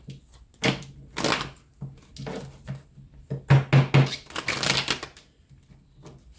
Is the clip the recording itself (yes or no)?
yes